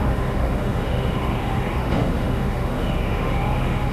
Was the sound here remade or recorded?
remade